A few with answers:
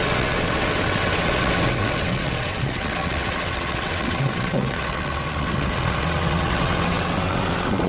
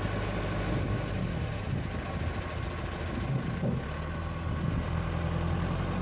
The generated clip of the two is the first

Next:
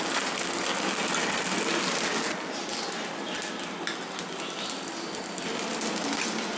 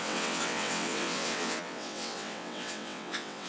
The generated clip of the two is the second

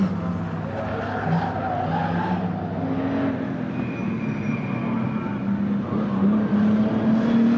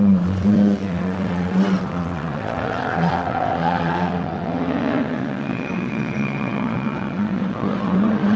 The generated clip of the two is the second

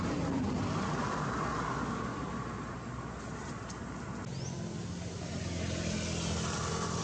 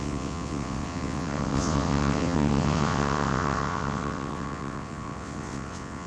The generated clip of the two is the second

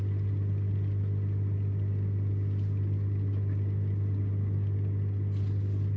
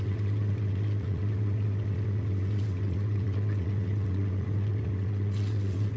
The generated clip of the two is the second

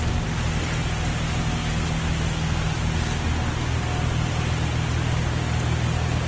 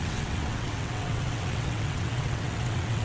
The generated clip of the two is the second